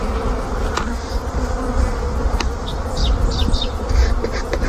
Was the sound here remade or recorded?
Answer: recorded